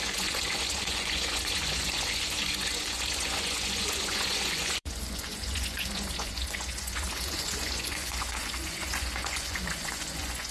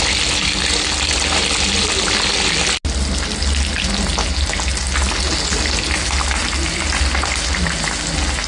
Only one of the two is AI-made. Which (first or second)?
first